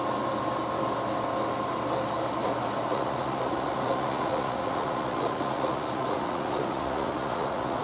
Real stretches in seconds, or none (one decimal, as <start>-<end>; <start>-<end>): 0.0-2.9